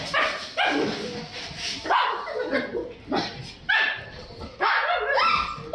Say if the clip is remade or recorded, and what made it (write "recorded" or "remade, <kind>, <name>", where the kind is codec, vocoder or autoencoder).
recorded